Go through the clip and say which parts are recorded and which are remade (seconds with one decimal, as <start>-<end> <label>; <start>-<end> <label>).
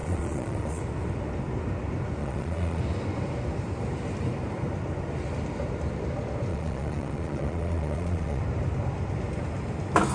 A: 0.0-0.8 remade; 0.8-2.2 recorded; 2.2-2.8 remade; 2.8-6.5 recorded; 6.5-8.4 remade; 8.4-10.1 recorded